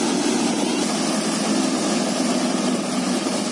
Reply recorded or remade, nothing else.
recorded